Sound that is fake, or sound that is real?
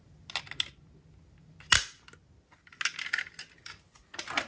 real